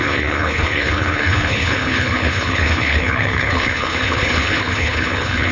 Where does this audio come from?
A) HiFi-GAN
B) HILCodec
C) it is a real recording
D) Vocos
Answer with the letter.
B